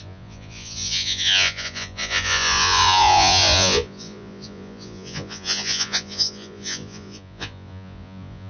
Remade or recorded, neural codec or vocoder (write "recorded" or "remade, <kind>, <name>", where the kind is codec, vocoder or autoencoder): remade, vocoder, Vocos